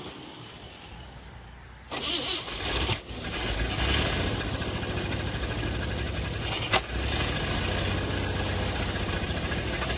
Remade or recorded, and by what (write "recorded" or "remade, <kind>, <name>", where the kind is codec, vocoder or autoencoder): recorded